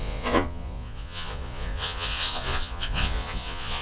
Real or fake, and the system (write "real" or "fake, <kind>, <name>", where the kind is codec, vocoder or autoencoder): fake, vocoder, Vocos